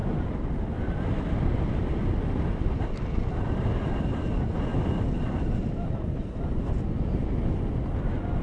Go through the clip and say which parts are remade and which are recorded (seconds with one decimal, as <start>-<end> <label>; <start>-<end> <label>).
0.0-8.4 recorded